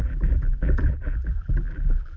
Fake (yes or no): yes